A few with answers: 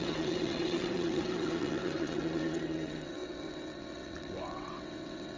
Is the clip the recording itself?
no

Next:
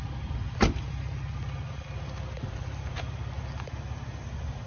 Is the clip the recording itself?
yes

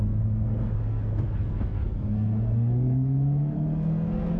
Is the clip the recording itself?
no